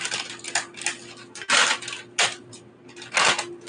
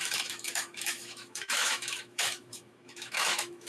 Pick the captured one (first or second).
first